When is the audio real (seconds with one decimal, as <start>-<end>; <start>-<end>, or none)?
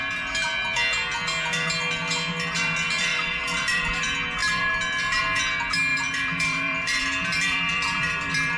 0.0-3.1; 4.0-5.9